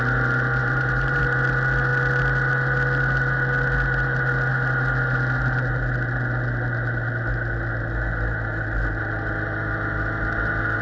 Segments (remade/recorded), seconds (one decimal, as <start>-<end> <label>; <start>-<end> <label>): 0.0-0.6 recorded; 0.6-1.2 remade; 1.2-10.8 recorded